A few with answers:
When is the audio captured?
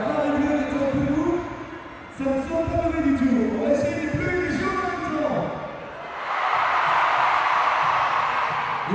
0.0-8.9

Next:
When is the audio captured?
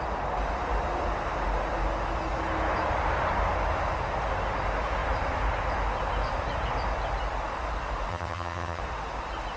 0.0-8.1; 8.8-9.6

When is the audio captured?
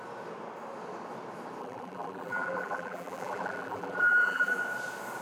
0.0-1.6; 4.6-5.2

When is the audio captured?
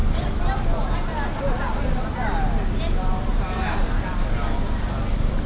1.8-3.3; 4.1-5.5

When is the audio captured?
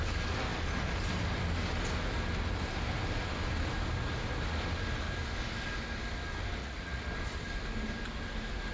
0.0-6.6; 7.1-8.7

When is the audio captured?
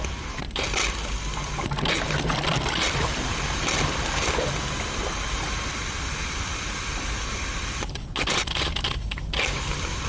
0.0-10.1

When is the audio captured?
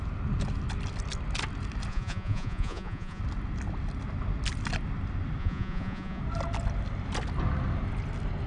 0.0-1.9; 3.2-5.4; 6.2-8.5